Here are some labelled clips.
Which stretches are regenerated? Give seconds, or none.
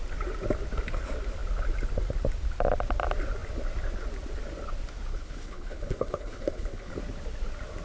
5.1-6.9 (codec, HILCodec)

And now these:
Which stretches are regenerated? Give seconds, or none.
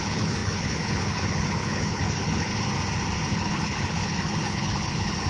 0.0-2.5 (codec, HILCodec); 3.3-5.3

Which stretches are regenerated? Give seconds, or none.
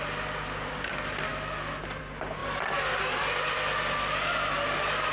none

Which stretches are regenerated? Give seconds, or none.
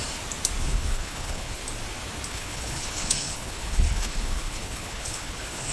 0.6-1.6 (codec, HILCodec); 2.3-5.7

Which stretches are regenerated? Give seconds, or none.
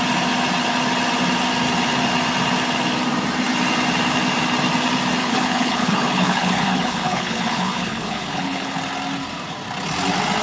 5.2-8.8 (codec, HILCodec)